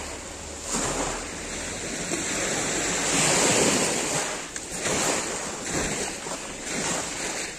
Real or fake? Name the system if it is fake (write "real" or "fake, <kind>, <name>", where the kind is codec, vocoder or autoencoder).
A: real